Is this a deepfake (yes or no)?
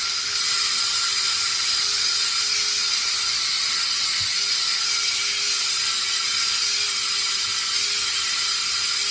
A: no